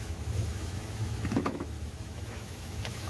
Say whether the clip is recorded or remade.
remade